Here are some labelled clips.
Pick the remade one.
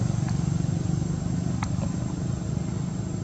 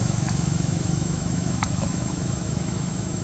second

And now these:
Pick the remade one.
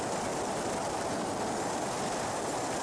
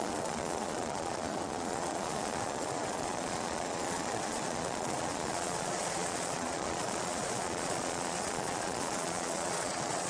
second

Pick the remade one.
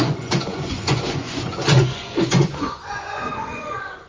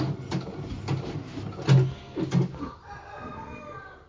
first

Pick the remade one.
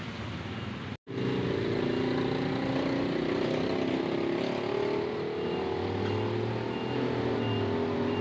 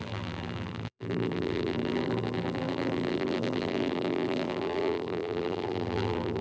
second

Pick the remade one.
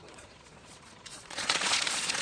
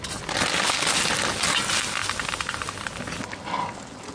first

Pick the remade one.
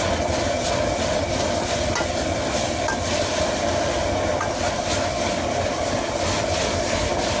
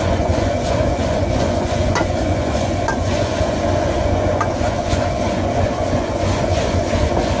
second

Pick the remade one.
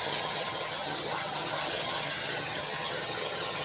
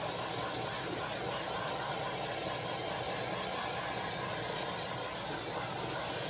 first